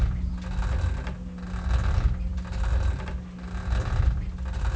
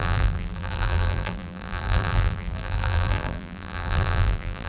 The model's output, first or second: second